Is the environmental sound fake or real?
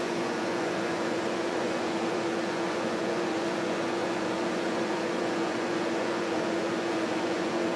fake